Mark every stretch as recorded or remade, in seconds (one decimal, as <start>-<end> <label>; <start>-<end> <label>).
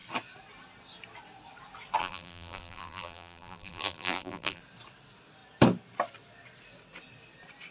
0.0-2.0 recorded; 2.0-4.6 remade; 4.6-7.7 recorded